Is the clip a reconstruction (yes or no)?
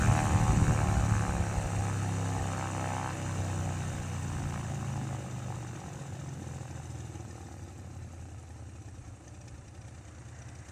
no